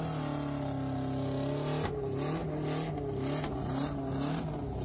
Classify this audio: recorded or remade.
recorded